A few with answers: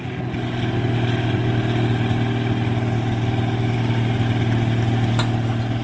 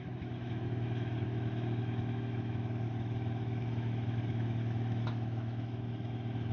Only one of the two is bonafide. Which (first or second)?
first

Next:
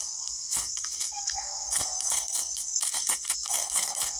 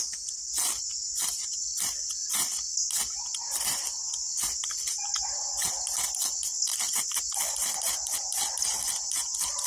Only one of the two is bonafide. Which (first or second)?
second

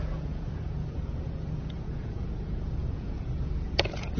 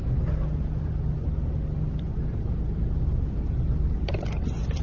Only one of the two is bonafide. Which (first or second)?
second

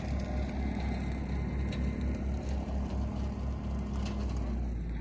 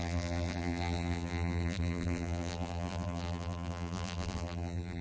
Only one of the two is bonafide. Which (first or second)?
first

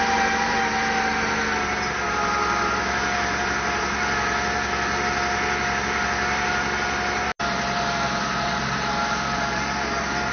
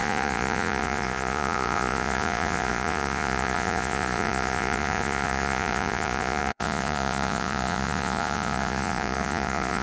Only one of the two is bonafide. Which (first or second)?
first